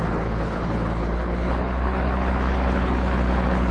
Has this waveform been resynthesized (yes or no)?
yes